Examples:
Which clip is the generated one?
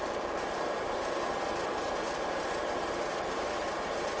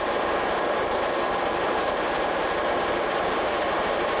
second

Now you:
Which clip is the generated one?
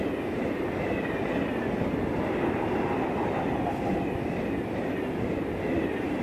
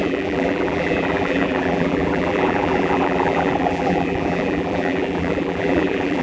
second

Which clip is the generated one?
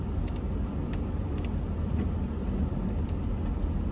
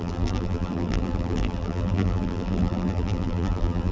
second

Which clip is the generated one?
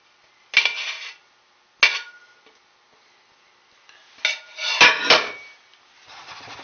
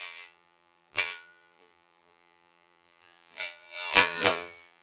second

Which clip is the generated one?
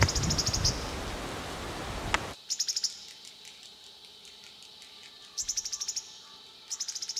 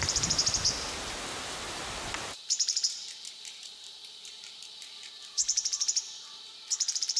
second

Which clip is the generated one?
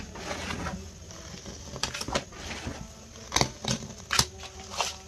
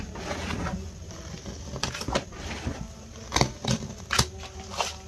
second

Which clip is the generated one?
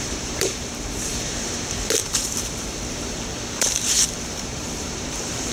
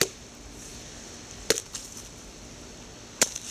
first